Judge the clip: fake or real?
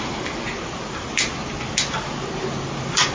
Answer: real